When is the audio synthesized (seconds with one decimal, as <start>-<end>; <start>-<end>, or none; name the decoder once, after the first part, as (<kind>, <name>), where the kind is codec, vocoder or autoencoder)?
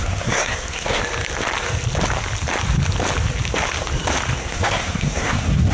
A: 0.0-1.0 (codec, SNAC); 4.4-5.7